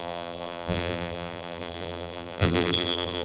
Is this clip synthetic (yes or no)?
yes